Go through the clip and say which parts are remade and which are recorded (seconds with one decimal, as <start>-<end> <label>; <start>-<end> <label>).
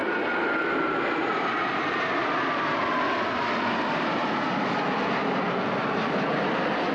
0.0-6.9 recorded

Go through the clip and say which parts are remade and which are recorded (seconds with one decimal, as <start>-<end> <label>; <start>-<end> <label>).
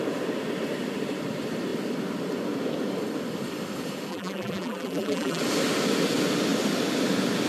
0.0-4.1 recorded; 4.1-5.4 remade; 5.4-7.5 recorded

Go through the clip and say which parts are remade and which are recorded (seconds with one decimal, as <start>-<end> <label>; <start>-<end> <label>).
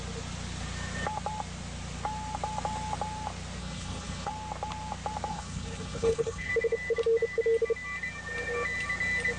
0.0-3.6 recorded; 3.6-4.3 remade; 4.3-5.3 recorded; 5.3-6.5 remade; 6.5-9.4 recorded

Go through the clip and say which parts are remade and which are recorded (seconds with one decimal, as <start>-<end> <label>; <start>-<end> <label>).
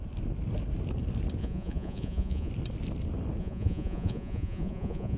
0.0-1.4 recorded; 1.4-2.5 remade; 2.5-3.4 recorded; 3.4-5.2 remade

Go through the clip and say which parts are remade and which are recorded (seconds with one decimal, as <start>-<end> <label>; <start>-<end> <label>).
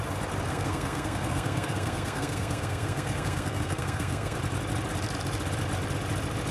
0.0-0.5 recorded; 0.5-4.4 remade; 4.4-6.5 recorded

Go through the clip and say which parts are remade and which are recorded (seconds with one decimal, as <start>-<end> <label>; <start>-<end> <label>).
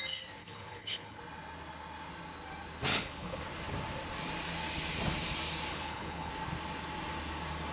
0.0-0.4 recorded; 0.4-1.2 remade; 1.2-2.9 recorded; 2.9-3.4 remade; 3.4-5.7 recorded; 5.7-6.3 remade; 6.3-7.7 recorded